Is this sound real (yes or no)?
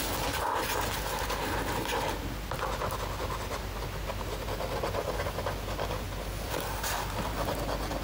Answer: yes